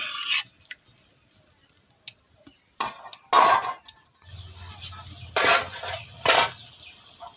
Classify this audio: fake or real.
real